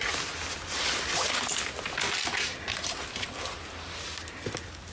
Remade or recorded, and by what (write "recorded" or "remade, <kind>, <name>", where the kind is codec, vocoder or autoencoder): recorded